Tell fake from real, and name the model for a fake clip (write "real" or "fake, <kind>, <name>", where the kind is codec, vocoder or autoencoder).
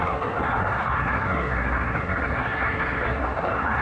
fake, codec, SNAC